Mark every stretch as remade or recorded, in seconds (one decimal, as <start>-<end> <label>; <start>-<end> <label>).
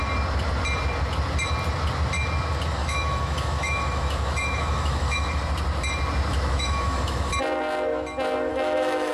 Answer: 0.0-2.8 recorded; 2.8-5.4 remade; 5.4-6.3 recorded; 6.3-7.3 remade; 7.3-8.5 recorded; 8.5-9.1 remade